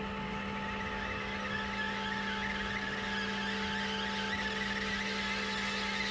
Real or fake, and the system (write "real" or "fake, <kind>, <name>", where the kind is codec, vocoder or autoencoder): real